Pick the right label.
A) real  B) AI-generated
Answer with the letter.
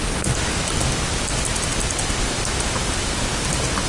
A